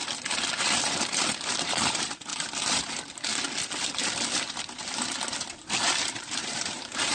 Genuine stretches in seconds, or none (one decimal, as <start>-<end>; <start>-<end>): 0.0-0.6; 2.3-6.2